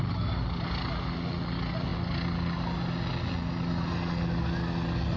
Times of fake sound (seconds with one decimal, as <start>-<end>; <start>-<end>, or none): none